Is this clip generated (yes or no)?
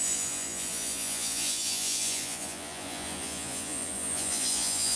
yes